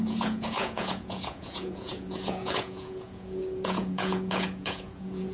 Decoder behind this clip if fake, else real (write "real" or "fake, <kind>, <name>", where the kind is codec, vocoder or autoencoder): fake, vocoder, Vocos